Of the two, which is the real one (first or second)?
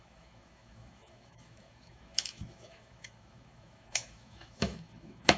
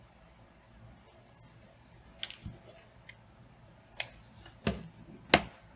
second